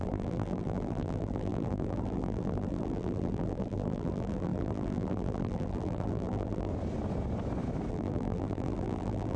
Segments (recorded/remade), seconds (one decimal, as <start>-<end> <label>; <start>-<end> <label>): 0.0-6.7 remade; 6.7-7.9 recorded; 7.9-9.4 remade